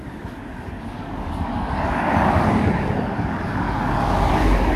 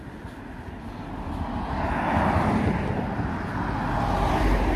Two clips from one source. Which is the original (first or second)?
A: second